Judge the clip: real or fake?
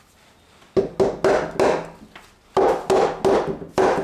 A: real